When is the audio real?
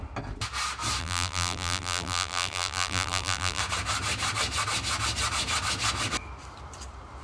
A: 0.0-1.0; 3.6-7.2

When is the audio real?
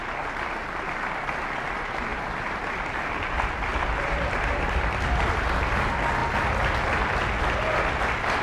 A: 0.0-3.7; 5.7-8.4